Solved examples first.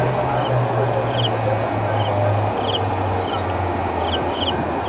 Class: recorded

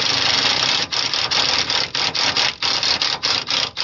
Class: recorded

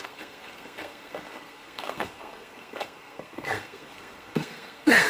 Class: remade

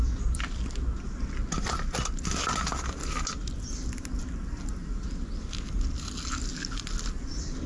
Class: recorded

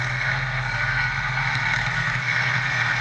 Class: remade